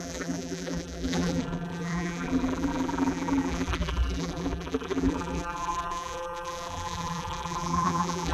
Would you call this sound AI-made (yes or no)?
yes